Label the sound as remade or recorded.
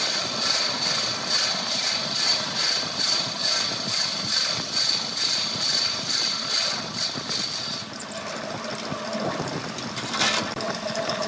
remade